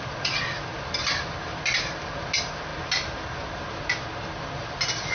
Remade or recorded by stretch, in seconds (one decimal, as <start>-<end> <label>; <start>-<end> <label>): 0.0-5.1 recorded